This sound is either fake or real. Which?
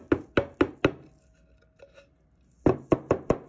real